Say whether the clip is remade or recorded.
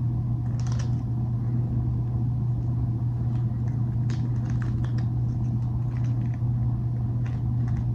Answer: recorded